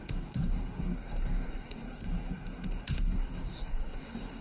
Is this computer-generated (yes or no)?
yes